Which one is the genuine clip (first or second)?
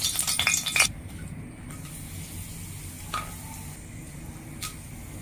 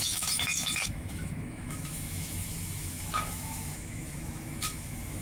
first